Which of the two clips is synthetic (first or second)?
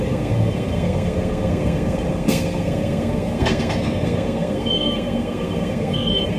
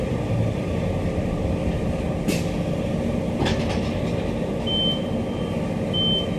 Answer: first